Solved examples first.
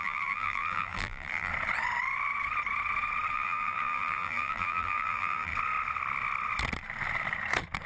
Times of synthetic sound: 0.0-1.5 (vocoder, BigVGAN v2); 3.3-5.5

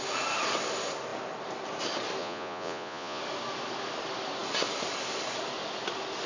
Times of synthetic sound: 2.2-3.2 (vocoder, Vocos)

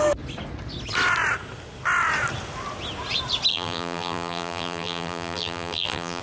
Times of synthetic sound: 3.5-6.2 (vocoder, BigVGAN v2)